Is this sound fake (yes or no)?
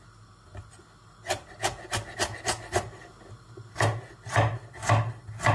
no